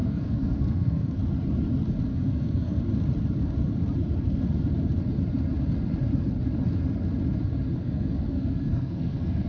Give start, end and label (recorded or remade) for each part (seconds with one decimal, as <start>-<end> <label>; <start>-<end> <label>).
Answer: 0.0-1.2 remade; 1.2-2.1 recorded; 2.1-2.8 remade; 2.8-7.8 recorded; 7.8-9.5 remade